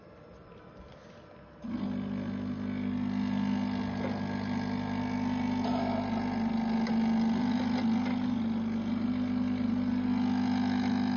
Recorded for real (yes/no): yes